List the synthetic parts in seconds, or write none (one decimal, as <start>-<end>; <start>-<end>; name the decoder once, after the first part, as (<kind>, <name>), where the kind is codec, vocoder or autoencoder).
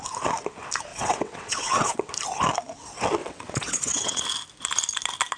0.9-2.1 (vocoder, WaveNeXt); 3.2-4.2